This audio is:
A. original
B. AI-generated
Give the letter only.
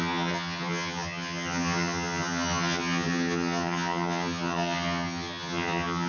B